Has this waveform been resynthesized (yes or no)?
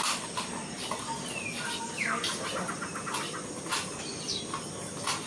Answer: no